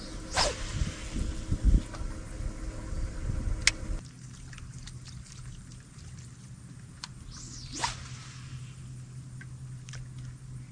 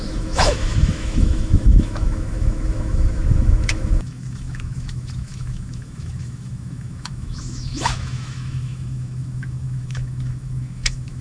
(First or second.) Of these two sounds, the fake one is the second